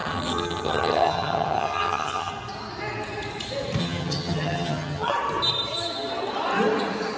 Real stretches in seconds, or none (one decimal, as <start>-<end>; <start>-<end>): 2.3-3.8; 5.1-7.2